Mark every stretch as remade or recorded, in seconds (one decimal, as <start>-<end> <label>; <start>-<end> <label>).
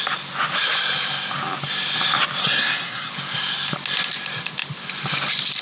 0.0-2.4 recorded; 2.4-3.1 remade; 3.1-5.6 recorded